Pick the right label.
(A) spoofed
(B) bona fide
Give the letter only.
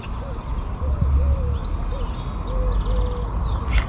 B